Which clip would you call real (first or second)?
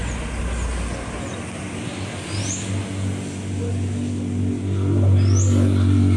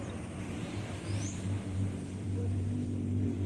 first